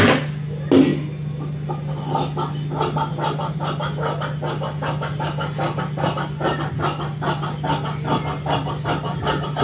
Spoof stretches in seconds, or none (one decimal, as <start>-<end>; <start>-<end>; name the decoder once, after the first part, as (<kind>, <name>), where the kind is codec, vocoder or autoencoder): none